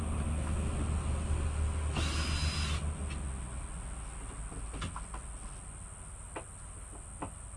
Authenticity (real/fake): real